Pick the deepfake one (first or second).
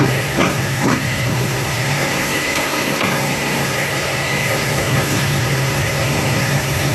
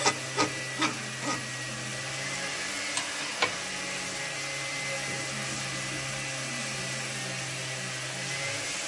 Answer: first